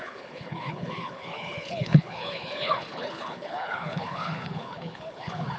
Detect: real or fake fake